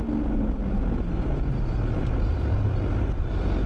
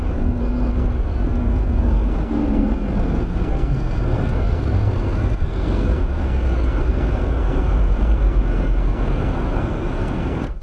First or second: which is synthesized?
second